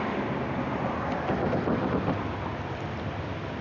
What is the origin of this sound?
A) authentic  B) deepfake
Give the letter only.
A